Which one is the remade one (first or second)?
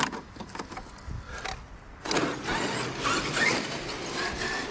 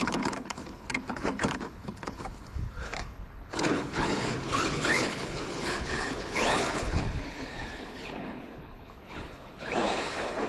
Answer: second